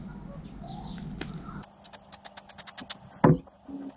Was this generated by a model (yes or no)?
no